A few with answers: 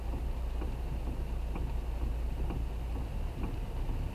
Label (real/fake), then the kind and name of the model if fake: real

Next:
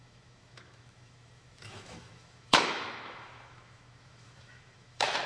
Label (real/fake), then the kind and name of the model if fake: fake, autoencoder, DAC-VAE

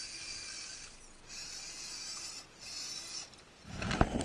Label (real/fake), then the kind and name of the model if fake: real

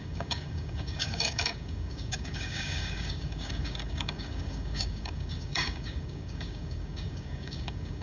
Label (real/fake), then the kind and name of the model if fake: fake, codec, DAC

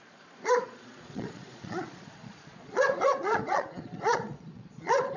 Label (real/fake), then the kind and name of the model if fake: fake, vocoder, Vocos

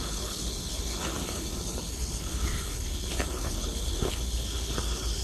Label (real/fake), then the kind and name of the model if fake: fake, codec, HILCodec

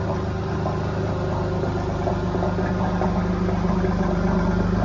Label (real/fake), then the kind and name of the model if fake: real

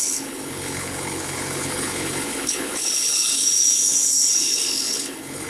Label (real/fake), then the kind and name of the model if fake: fake, codec, HILCodec